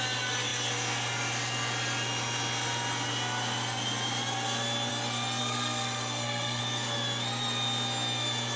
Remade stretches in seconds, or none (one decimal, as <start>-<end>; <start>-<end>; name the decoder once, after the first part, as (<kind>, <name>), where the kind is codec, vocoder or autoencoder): 5.4-6.6 (codec, SNAC)